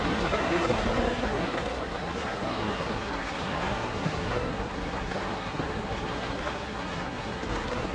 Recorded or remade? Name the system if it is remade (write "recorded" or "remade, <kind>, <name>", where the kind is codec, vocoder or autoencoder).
remade, codec, SNAC